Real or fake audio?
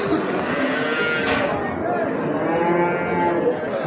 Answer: real